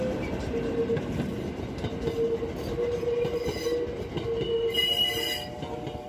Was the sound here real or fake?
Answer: real